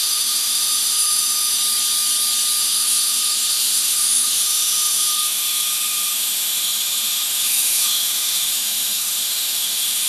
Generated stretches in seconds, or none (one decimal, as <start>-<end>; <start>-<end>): 0.0-1.6; 2.6-10.1